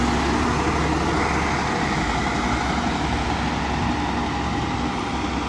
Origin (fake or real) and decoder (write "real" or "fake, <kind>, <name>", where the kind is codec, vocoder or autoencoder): real